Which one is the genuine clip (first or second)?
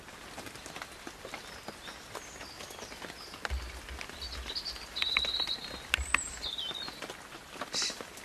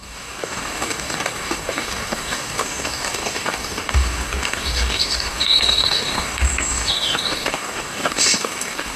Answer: first